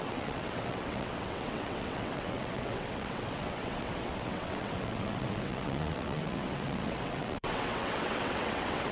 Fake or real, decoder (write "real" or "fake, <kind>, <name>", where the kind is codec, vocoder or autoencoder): fake, vocoder, WaveNeXt